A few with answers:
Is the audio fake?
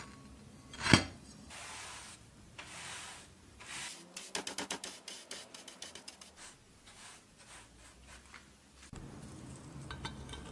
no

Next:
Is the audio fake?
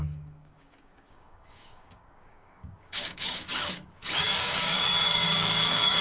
yes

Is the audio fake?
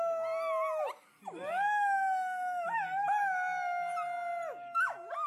no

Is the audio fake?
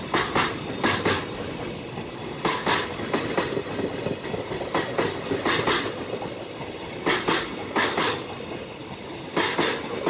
no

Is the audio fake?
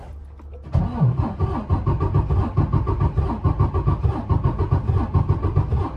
no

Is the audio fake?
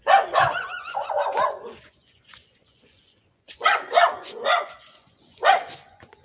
yes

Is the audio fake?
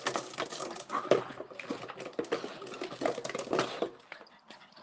no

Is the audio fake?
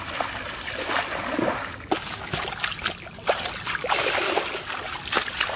no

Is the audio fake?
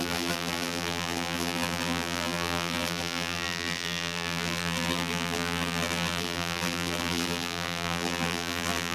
yes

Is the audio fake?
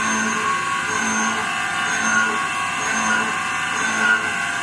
no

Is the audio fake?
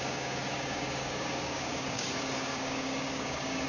yes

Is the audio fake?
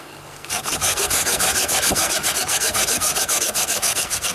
yes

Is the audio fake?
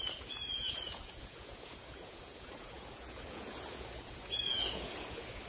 yes